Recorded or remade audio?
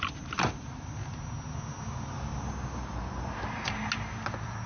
recorded